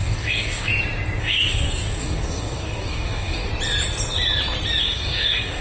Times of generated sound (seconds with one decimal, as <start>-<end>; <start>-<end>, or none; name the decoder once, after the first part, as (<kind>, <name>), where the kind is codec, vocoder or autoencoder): 0.0-0.7 (codec, DAC); 1.2-3.5; 4.8-5.6